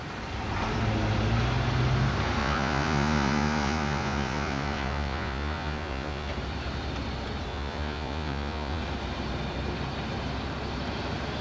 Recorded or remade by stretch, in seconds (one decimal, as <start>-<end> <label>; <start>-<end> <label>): 0.0-2.4 recorded; 2.4-6.3 remade; 6.3-7.5 recorded; 7.5-8.8 remade; 8.8-11.4 recorded